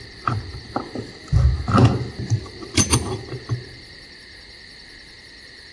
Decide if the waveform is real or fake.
real